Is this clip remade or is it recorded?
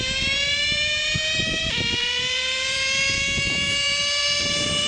remade